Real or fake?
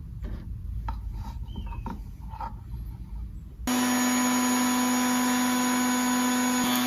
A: real